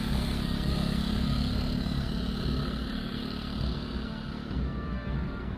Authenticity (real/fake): fake